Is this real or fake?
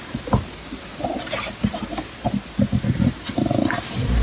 real